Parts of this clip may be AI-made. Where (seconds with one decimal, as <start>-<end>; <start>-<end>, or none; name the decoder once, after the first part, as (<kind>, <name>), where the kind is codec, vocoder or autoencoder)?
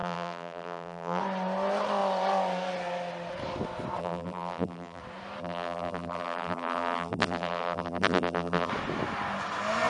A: 0.0-1.2 (vocoder, BigVGAN v2); 4.0-5.0; 5.4-8.7